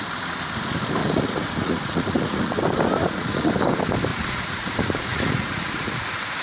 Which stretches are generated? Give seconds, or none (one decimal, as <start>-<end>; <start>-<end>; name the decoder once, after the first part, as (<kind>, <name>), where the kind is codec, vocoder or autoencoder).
1.0-2.6 (vocoder, Vocos); 3.0-3.5; 4.1-6.4